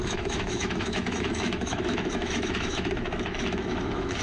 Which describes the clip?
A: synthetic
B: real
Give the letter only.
A